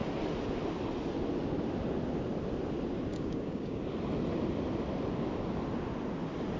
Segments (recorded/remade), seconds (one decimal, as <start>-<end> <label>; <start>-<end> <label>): 0.0-3.1 recorded; 3.1-3.8 remade; 3.8-6.6 recorded